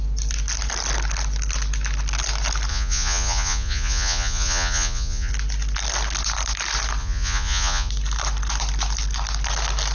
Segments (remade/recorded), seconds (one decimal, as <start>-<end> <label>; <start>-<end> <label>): 0.0-2.7 recorded; 2.7-5.3 remade; 5.3-7.0 recorded; 7.0-7.9 remade; 7.9-9.9 recorded